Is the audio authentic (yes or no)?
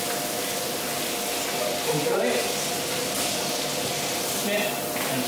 yes